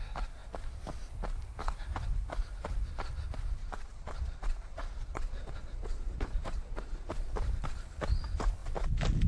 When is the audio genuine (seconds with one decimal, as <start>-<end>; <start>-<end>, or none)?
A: 0.0-3.6; 7.1-9.3